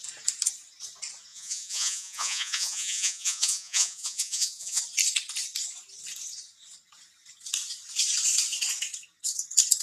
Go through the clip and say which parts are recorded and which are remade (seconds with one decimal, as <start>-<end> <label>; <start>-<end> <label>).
0.0-1.3 recorded; 1.3-4.8 remade; 4.8-9.8 recorded